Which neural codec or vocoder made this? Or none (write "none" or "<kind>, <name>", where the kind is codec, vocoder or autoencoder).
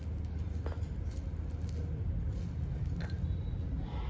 none